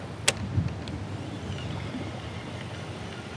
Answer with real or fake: real